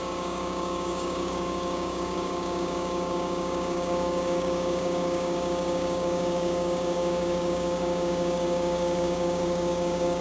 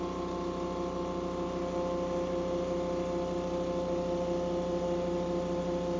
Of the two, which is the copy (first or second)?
first